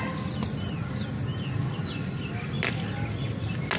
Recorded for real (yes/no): yes